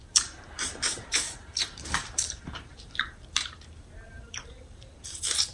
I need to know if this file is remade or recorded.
remade